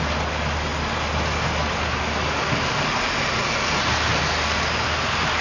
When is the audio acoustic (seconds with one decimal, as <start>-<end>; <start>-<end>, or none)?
0.0-5.4